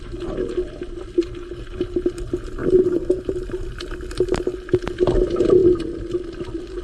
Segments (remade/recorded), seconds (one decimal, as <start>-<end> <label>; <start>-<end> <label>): 0.0-2.6 recorded; 2.6-3.8 remade; 3.8-6.8 recorded